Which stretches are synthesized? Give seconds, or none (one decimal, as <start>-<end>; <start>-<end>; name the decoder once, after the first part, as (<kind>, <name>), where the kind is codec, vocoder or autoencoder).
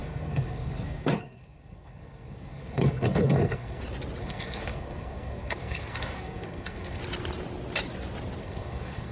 0.0-3.8 (codec, SNAC); 4.2-7.0; 8.4-9.1